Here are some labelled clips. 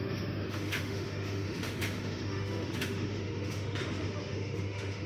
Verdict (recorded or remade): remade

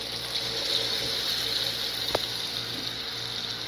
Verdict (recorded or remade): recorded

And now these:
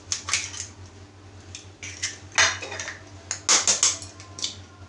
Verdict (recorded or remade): recorded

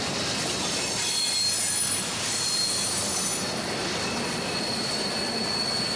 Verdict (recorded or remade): remade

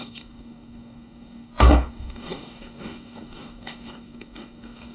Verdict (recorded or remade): remade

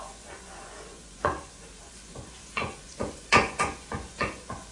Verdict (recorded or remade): remade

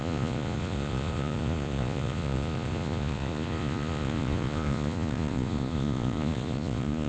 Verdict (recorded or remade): remade